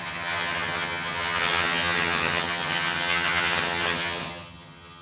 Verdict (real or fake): fake